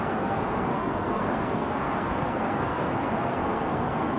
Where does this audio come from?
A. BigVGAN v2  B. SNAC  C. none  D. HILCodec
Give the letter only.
B